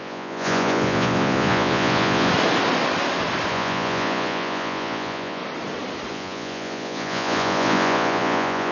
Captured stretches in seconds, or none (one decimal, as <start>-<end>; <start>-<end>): 2.3-3.5; 5.4-6.1